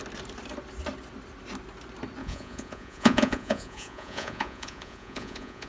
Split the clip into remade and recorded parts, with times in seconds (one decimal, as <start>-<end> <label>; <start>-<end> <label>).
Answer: 0.0-2.2 recorded; 2.2-5.7 remade